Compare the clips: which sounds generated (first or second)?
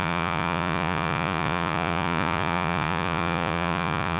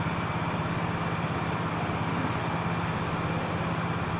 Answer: first